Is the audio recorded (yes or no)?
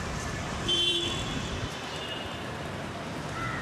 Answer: no